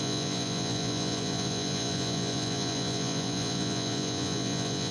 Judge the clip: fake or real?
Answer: fake